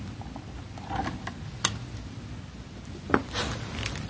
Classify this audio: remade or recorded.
recorded